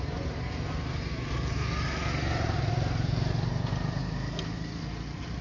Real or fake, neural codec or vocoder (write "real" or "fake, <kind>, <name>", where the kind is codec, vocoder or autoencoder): real